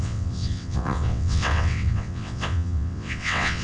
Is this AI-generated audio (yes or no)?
yes